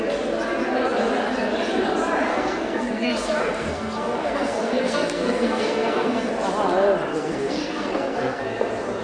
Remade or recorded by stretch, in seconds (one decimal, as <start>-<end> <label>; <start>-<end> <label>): 0.0-2.3 recorded; 2.3-6.3 remade; 6.3-7.1 recorded; 7.1-8.4 remade; 8.4-9.0 recorded